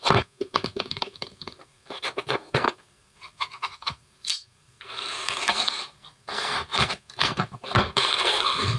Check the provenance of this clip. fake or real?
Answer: fake